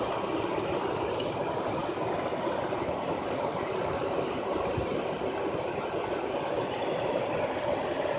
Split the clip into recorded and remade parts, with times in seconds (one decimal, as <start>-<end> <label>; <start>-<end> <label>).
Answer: 0.0-8.2 recorded